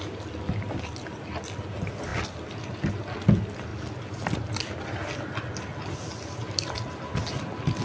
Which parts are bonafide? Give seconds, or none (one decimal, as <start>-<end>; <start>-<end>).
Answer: 0.0-7.8